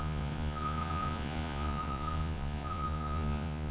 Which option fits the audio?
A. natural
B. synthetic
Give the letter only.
B